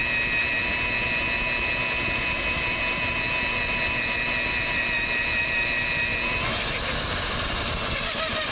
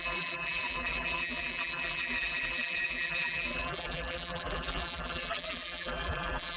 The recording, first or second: first